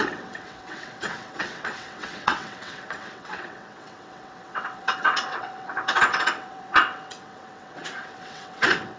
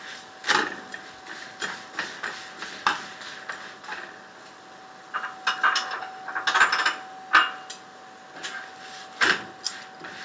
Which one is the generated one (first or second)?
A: first